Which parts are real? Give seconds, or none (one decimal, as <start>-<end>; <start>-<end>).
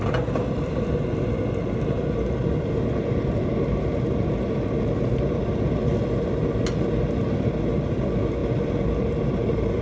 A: 0.0-9.8